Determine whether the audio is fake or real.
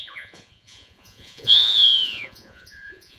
fake